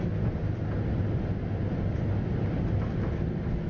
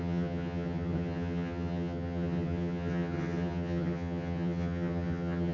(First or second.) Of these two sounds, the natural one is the first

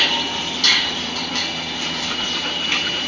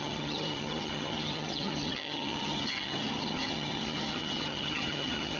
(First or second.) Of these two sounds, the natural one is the first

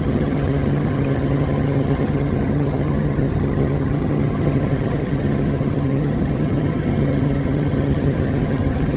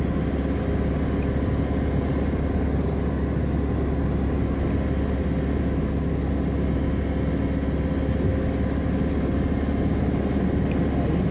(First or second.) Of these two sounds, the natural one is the second